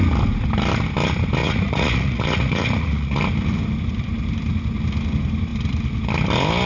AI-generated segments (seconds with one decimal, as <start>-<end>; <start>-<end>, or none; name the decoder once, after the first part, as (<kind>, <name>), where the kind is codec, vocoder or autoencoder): 1.4-3.2 (vocoder, Vocos)